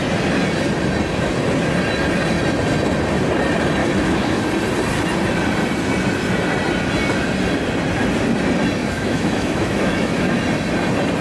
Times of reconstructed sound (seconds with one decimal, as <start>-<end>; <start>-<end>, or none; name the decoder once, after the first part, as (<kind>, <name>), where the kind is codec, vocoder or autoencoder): 3.8-4.4 (autoencoder, DAC-VAE); 8.8-10.4